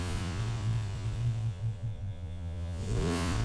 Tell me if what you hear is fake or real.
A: fake